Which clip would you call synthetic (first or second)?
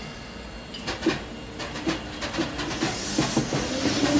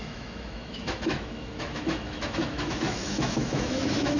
second